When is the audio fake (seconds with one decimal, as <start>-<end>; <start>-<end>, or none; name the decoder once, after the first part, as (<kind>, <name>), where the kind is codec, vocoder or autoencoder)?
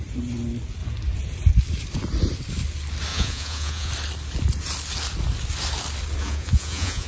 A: 3.1-3.9 (vocoder, Vocos); 6.2-7.1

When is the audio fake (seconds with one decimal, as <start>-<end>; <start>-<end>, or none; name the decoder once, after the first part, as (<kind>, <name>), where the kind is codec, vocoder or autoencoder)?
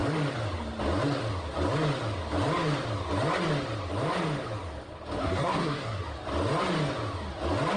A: 5.2-6.0 (codec, SNAC)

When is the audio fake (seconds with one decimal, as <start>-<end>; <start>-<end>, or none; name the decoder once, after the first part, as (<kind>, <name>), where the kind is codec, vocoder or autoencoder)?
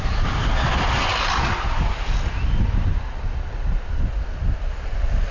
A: none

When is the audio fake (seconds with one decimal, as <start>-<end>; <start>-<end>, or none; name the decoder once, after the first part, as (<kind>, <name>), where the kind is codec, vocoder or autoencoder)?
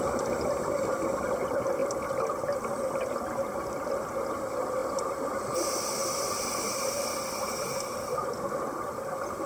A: none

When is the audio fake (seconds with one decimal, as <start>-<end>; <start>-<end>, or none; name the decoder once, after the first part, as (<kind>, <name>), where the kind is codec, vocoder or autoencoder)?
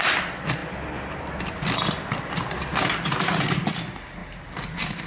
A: none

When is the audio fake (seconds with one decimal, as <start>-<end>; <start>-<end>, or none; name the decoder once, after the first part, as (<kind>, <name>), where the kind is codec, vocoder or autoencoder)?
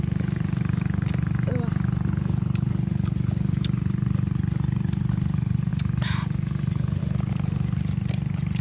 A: none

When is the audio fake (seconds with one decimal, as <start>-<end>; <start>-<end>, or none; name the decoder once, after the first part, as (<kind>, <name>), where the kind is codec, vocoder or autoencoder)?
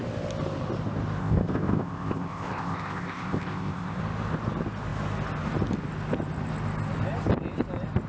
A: 1.2-4.0 (codec, ZipCodec)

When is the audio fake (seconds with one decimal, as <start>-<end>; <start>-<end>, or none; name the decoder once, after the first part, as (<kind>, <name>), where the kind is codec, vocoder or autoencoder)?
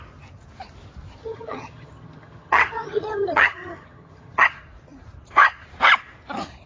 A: 1.2-4.4 (vocoder, HiFi-GAN)